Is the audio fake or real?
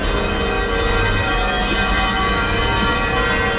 real